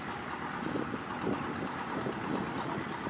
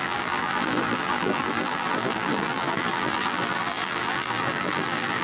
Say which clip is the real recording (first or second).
first